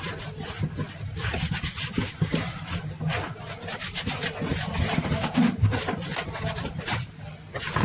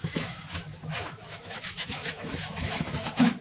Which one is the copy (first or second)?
second